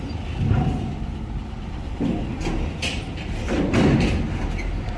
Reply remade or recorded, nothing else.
recorded